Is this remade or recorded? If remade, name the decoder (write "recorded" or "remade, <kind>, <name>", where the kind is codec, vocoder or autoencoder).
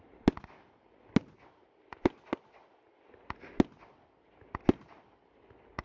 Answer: recorded